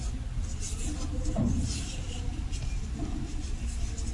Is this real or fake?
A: real